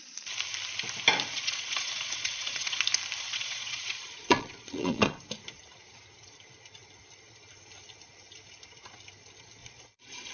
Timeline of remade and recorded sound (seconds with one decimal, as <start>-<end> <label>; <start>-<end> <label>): 0.0-1.3 recorded; 1.3-2.8 remade; 2.8-3.3 recorded; 3.3-5.2 remade; 5.2-9.6 recorded; 9.6-10.3 remade